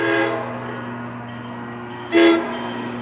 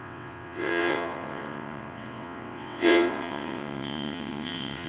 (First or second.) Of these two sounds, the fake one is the second